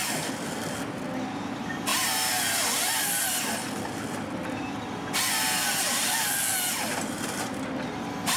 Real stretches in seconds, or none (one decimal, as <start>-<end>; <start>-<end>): 0.0-8.4